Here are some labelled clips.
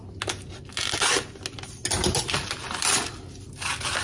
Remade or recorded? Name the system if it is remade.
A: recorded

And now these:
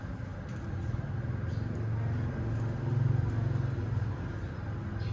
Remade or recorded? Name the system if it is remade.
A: recorded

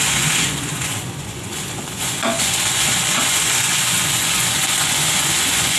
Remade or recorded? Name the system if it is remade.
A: remade, vocoder, Vocos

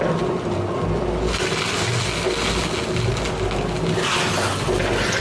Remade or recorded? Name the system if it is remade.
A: recorded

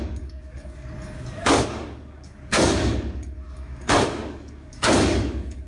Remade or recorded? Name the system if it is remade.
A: remade, codec, DAC